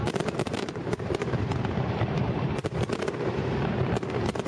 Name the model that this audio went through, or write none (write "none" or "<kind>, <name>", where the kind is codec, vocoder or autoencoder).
vocoder, BigVGAN v2